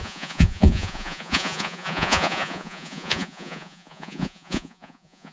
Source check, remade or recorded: remade